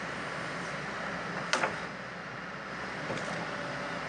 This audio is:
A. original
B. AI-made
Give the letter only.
A